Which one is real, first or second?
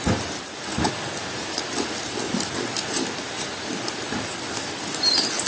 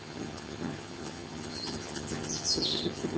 first